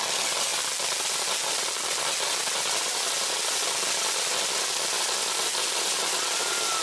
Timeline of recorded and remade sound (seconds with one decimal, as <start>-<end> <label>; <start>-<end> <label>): 0.0-6.8 recorded